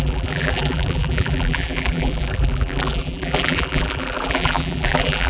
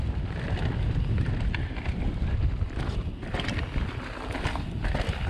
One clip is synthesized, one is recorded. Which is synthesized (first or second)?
first